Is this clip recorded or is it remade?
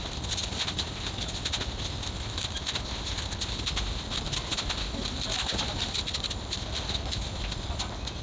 recorded